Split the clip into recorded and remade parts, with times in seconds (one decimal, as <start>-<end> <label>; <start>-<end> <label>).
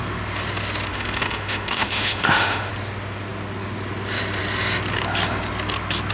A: 0.0-0.9 recorded; 0.9-2.7 remade; 2.7-6.1 recorded